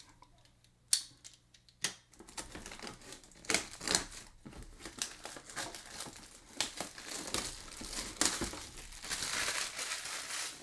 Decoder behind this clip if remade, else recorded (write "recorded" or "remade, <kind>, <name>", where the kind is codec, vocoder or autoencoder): recorded